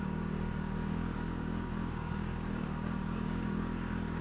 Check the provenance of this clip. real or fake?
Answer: fake